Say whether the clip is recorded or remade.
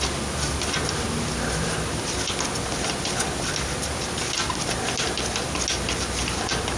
recorded